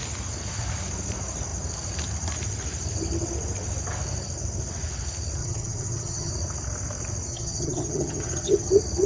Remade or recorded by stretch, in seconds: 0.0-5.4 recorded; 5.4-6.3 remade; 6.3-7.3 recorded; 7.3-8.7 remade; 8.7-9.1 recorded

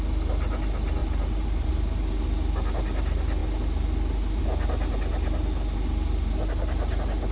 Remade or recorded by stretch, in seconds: 0.0-1.0 recorded; 1.0-1.7 remade; 1.7-7.3 recorded

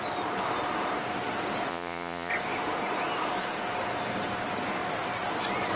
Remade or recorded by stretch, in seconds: 0.0-1.7 recorded; 1.7-2.3 remade; 2.3-5.8 recorded

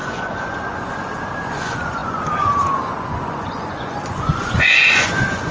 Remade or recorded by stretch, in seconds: 0.0-5.5 remade